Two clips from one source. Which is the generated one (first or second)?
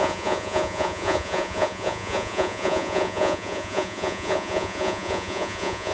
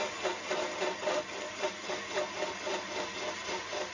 first